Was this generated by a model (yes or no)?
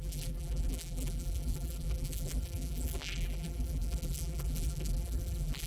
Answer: yes